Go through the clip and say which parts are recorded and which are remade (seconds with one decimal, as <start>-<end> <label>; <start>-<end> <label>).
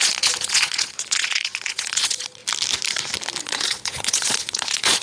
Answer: 0.0-2.4 remade; 2.4-3.4 recorded; 3.4-5.0 remade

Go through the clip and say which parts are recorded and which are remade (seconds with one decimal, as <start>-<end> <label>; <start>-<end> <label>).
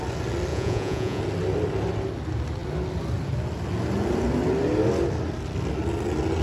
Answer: 0.0-0.5 recorded; 0.5-1.2 remade; 1.2-6.4 recorded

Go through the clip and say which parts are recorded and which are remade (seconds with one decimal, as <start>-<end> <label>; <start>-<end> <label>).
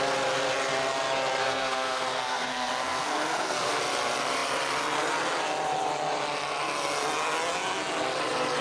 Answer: 0.0-1.4 recorded; 1.4-3.8 remade; 3.8-8.6 recorded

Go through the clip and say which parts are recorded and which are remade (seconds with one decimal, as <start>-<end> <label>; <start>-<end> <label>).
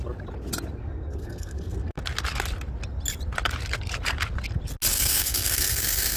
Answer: 0.0-0.8 recorded; 0.8-2.0 remade; 2.0-4.9 recorded; 4.9-6.2 remade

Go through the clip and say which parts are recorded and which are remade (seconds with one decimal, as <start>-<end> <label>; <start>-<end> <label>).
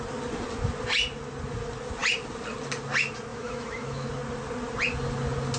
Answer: 0.0-3.3 recorded; 3.3-4.1 remade; 4.1-5.6 recorded